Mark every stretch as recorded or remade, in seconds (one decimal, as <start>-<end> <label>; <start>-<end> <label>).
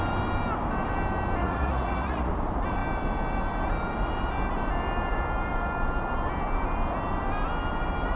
0.0-1.4 recorded; 1.4-2.3 remade; 2.3-8.2 recorded